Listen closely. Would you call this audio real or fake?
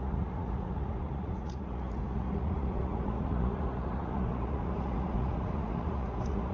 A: fake